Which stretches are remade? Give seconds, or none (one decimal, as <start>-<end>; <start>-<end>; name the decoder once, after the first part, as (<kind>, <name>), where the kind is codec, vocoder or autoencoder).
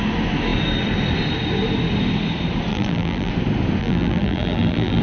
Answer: 2.7-3.3 (vocoder, BigVGAN v2); 3.8-5.0